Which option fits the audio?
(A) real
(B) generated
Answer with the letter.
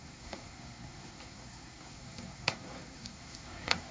B